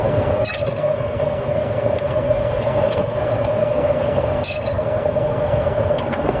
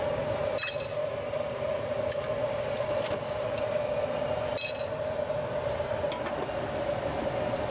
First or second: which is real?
second